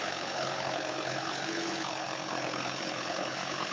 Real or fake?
fake